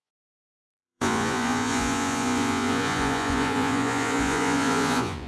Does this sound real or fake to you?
fake